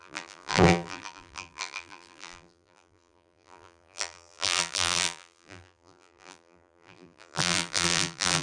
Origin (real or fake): fake